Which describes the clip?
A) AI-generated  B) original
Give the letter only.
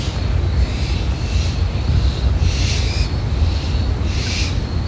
B